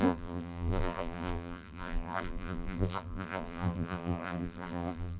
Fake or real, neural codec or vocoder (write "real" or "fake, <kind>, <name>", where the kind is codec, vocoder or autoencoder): fake, vocoder, BigVGAN v2